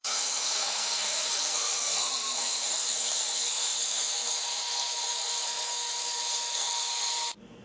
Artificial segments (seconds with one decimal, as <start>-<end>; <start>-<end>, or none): 0.0-7.6

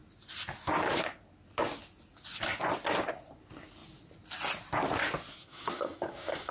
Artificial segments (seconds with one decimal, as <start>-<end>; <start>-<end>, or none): 5.4-6.5

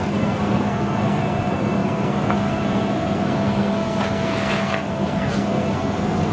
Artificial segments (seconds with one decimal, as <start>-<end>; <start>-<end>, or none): 0.0-6.3

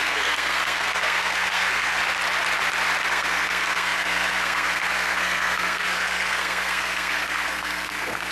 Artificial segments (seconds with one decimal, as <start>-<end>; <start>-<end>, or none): 0.0-2.0; 3.1-8.3

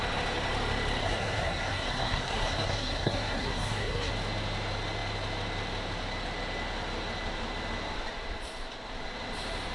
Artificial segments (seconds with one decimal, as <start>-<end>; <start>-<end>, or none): 1.0-4.1

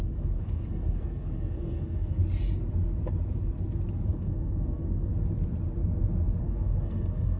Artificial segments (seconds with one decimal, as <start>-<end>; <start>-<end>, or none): 0.0-2.2; 4.1-5.1; 6.4-7.4

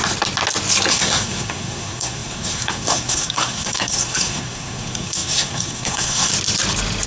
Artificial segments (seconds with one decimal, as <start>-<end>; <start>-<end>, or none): 0.9-6.3

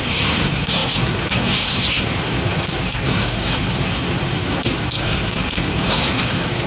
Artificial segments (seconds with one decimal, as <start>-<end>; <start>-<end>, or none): 0.0-6.7